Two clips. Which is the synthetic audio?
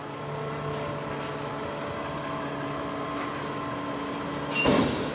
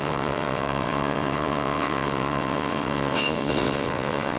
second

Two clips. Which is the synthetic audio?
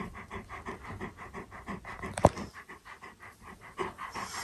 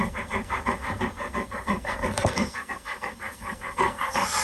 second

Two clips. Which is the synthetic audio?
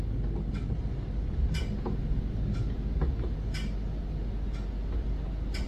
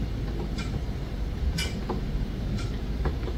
second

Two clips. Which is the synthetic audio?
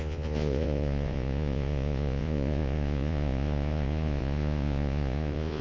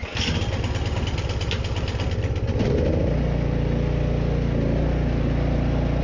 first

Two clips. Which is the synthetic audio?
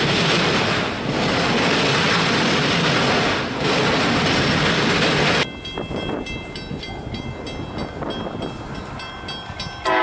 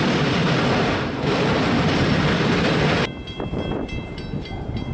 second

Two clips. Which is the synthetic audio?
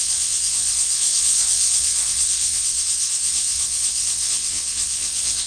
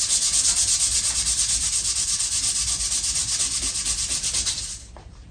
first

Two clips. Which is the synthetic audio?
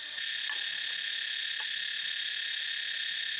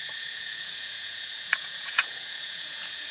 second